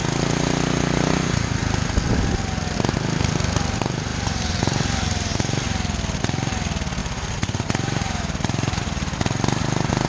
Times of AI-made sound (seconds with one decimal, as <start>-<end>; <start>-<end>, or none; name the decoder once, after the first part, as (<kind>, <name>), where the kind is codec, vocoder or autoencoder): 4.1-4.8 (vocoder, BigVGAN v2); 7.0-9.2